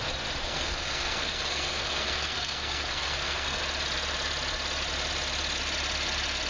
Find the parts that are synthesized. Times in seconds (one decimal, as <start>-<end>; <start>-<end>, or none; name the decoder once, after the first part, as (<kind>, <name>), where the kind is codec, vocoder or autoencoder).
0.4-3.6 (codec, SNAC)